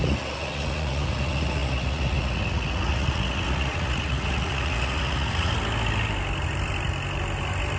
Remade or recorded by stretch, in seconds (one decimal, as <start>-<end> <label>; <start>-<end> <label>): 0.0-5.5 remade; 5.5-7.8 recorded